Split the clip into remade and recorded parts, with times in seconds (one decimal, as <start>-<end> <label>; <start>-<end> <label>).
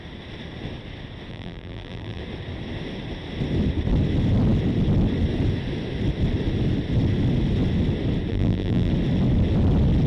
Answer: 0.0-1.3 recorded; 1.3-2.2 remade; 2.2-8.3 recorded; 8.3-8.9 remade; 8.9-10.1 recorded